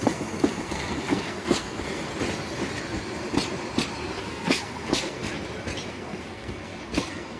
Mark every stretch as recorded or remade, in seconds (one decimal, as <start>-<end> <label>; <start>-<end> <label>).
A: 0.0-2.1 remade; 2.1-4.2 recorded; 4.2-5.3 remade; 5.3-5.9 recorded; 5.9-7.4 remade